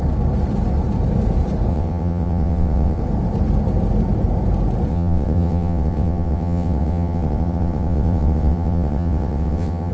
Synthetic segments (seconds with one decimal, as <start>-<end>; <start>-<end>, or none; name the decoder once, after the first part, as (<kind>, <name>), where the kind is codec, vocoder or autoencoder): 1.7-3.0 (vocoder, WaveNeXt); 4.9-9.9